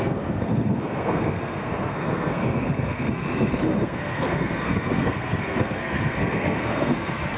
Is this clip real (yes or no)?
no